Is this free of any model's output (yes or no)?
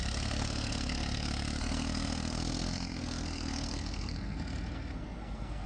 no